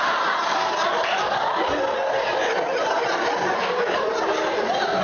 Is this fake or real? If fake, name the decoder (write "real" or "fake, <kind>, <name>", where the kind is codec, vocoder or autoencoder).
real